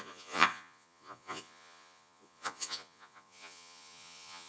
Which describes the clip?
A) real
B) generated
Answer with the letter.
B